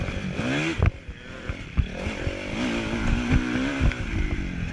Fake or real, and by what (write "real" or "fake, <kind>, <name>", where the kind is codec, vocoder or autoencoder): real